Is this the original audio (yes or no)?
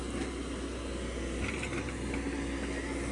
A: yes